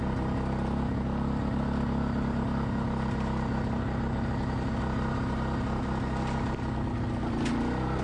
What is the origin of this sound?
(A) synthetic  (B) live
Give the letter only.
B